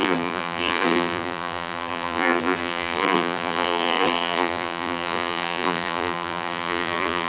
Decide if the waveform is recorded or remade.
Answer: remade